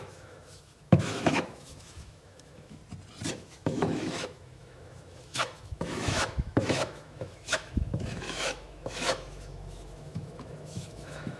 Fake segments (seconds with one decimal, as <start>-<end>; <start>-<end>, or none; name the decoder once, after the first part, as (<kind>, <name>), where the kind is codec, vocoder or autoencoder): 0.0-2.8 (autoencoder, DAC-VAE); 3.3-11.4